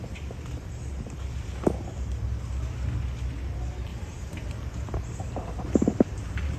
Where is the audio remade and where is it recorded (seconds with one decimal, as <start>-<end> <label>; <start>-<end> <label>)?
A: 0.0-3.9 recorded; 3.9-5.3 remade; 5.3-6.6 recorded